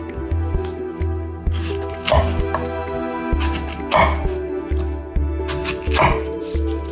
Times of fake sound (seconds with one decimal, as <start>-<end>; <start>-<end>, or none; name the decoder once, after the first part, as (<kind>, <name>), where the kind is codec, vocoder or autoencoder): none